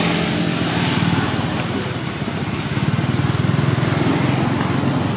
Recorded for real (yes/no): yes